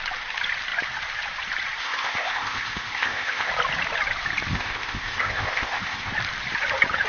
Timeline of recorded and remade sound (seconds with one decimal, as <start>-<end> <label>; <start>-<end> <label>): 0.0-1.8 recorded; 1.8-3.5 remade; 3.5-4.5 recorded; 4.5-6.1 remade; 6.1-7.1 recorded